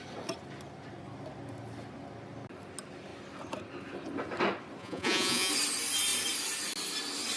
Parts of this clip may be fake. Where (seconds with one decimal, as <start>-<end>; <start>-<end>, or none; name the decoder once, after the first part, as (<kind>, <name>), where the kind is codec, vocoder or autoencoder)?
4.8-5.5 (vocoder, Vocos)